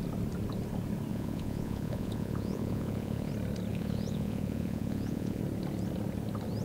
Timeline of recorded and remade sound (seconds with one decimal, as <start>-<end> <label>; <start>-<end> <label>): 0.0-1.1 recorded; 1.1-3.3 remade; 3.3-3.7 recorded; 3.7-5.4 remade; 5.4-6.6 recorded